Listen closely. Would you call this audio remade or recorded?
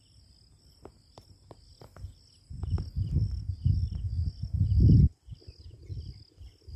recorded